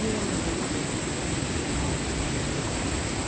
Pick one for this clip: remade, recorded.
recorded